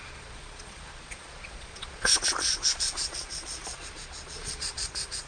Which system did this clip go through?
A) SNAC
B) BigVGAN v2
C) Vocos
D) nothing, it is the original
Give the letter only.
C